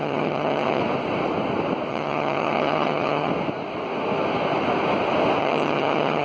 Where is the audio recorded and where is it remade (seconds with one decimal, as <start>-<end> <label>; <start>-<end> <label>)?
0.0-0.8 remade; 0.8-1.9 recorded; 1.9-3.3 remade; 3.3-5.4 recorded; 5.4-6.2 remade